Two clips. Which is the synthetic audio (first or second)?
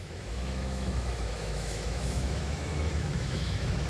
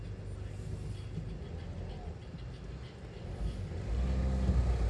first